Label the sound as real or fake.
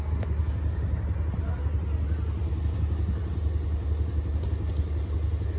real